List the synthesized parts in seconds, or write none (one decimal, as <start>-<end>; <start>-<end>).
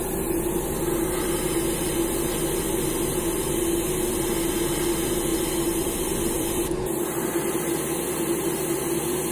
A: 5.3-6.5